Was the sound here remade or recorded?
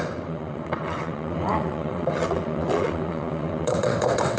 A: remade